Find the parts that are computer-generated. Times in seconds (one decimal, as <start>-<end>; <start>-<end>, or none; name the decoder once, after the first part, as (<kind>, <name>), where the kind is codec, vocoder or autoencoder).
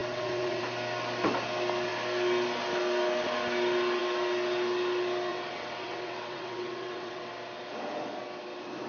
0.0-0.6 (vocoder, WaveNeXt); 5.3-7.3